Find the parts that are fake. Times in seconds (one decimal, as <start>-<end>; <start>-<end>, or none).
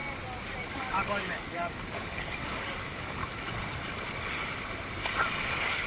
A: 0.7-3.2; 5.4-5.9